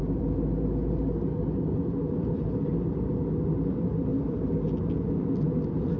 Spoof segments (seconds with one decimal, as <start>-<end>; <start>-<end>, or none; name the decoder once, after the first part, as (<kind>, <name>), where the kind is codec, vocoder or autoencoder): none